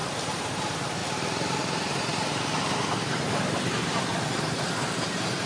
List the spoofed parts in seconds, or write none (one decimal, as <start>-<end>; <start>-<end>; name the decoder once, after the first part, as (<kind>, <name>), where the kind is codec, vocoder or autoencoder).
0.5-1.0 (vocoder, BigVGAN v2); 1.6-4.1; 4.7-5.5

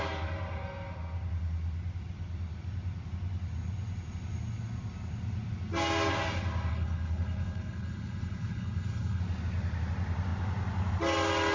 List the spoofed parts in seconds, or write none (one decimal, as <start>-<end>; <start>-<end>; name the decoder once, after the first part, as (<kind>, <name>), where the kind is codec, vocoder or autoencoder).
6.7-9.2 (codec, HILCodec)

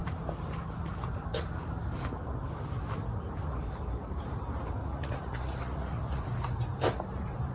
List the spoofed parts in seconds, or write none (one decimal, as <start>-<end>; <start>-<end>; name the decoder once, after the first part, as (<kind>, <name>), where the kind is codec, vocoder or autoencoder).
4.8-6.2 (vocoder, Vocos)

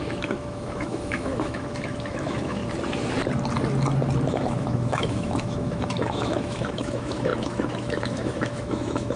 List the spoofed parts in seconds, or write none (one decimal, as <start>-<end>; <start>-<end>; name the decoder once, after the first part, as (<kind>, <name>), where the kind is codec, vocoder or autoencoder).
0.0-2.6 (autoencoder, DAC-VAE); 4.3-9.2